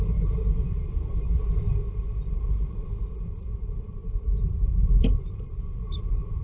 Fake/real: fake